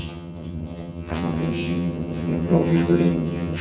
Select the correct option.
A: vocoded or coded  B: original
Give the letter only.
A